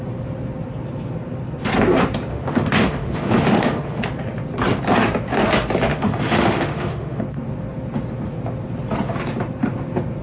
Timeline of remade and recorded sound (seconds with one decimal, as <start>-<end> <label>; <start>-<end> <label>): 0.0-2.3 recorded; 2.3-4.0 remade; 4.0-5.9 recorded; 5.9-7.2 remade; 7.2-10.2 recorded